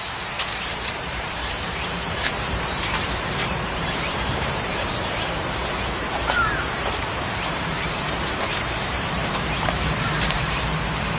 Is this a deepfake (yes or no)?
yes